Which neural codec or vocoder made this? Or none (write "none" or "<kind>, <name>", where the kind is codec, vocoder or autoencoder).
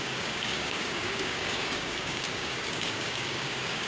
codec, DAC